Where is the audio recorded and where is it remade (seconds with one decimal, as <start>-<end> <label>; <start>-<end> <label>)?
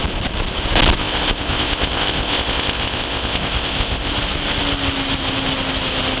0.0-1.0 recorded; 1.0-4.1 remade; 4.1-6.2 recorded